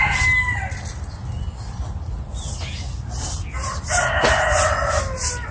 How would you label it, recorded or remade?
recorded